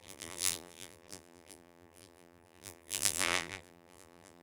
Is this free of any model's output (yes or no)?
no